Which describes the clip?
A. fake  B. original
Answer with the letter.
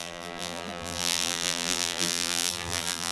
A